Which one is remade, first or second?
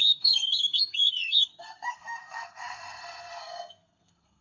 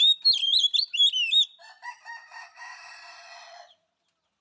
first